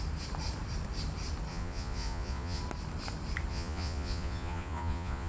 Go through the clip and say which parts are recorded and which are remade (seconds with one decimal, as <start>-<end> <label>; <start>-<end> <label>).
0.0-1.5 recorded; 1.5-2.6 remade; 2.6-3.5 recorded; 3.5-5.3 remade